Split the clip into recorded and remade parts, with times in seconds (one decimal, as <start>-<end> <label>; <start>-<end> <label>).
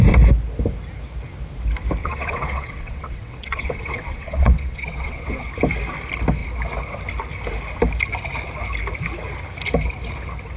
0.0-2.0 recorded; 2.0-5.5 remade; 5.5-10.6 recorded